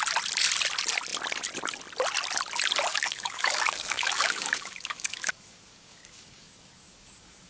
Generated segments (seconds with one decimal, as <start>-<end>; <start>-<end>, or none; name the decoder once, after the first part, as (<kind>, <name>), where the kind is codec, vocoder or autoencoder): 2.9-7.5 (codec, DAC)